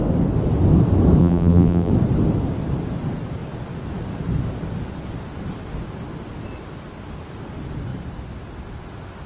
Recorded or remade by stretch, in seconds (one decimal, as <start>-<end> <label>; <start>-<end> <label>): 0.0-1.2 recorded; 1.2-1.9 remade; 1.9-9.3 recorded